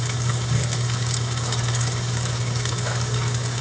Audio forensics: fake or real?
fake